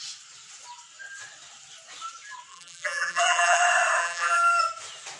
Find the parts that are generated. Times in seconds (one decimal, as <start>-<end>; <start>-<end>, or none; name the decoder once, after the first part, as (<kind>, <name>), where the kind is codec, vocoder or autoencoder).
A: 2.5-3.6 (vocoder, BigVGAN v2); 4.0-4.6